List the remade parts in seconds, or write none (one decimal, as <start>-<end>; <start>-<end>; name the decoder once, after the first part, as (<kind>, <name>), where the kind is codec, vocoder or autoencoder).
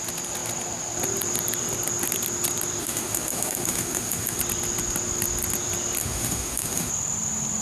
2.8-4.4 (autoencoder, DAC-VAE); 6.0-6.9